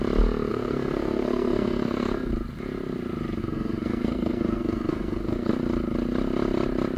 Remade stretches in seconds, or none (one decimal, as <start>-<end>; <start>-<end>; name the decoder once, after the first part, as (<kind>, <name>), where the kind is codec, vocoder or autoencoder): 0.5-2.3 (codec, SNAC); 3.4-5.5